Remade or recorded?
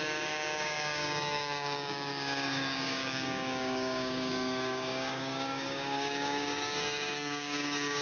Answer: remade